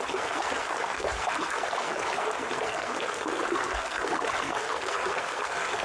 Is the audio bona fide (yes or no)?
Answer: no